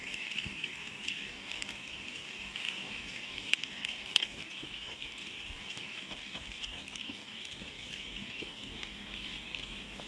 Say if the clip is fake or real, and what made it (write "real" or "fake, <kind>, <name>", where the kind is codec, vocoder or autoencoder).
fake, codec, DAC